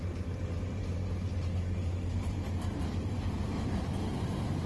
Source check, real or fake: fake